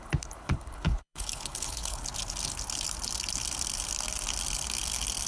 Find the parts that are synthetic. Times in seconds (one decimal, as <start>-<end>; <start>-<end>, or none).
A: 0.0-2.0